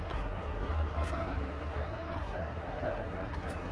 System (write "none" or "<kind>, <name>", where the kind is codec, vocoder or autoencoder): codec, SNAC